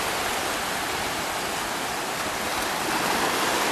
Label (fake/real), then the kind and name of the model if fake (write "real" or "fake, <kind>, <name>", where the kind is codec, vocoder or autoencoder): real